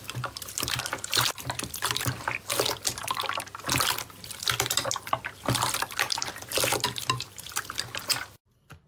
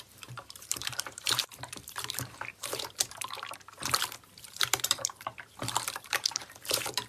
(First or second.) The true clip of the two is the first